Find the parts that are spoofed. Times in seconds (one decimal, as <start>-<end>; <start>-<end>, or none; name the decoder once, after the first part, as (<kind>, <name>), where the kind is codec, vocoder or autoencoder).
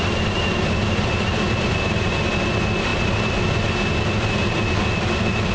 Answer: none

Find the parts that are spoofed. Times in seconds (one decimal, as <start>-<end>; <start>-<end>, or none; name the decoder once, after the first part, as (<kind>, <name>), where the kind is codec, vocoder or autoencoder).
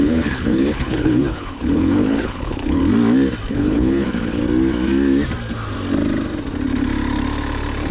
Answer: 0.0-2.8 (codec, HILCodec); 3.5-4.4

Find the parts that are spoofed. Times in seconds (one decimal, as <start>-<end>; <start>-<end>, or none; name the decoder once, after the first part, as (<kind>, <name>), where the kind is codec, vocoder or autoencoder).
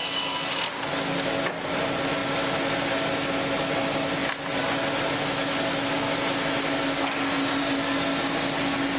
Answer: none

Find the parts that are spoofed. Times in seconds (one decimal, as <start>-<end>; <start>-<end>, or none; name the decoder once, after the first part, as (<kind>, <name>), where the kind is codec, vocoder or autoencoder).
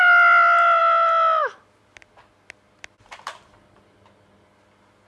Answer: none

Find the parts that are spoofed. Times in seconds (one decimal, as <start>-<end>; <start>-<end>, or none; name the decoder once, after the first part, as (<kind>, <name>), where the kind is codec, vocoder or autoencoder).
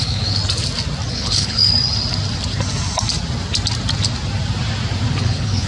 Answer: 0.0-0.4 (codec, HILCodec); 1.1-1.7; 5.1-5.7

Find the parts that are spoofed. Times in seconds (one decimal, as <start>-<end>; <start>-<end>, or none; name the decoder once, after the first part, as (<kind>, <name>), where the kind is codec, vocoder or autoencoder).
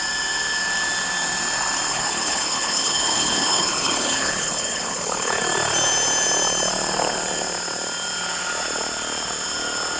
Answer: 1.9-5.4 (codec, HILCodec)